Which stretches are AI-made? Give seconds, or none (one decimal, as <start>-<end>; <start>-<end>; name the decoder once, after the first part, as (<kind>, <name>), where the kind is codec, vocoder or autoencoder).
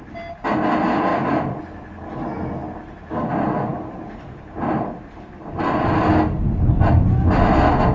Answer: 1.1-1.6 (vocoder, BigVGAN v2); 2.6-3.1; 3.7-6.0